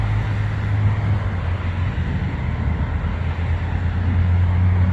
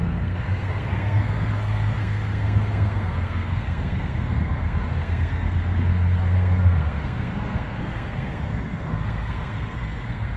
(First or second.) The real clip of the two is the first